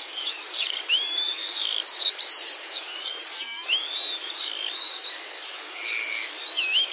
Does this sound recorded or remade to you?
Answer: remade